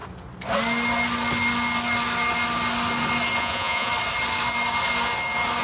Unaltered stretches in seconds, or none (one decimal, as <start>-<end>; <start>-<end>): 0.0-3.4; 3.9-5.6